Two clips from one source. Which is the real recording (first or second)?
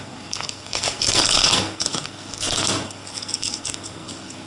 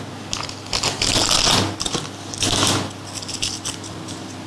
second